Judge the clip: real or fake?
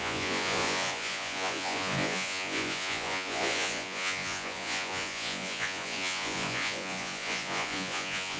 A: fake